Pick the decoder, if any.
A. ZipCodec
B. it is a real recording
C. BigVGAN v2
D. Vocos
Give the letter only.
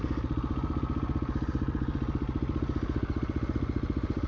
B